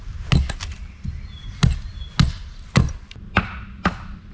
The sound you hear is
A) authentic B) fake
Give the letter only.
A